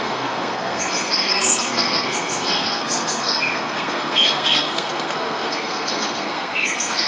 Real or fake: fake